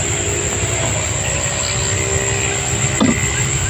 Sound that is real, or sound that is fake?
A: real